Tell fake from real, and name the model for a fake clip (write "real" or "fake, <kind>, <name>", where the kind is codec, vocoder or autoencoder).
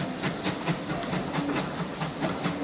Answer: real